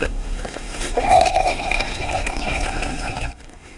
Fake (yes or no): yes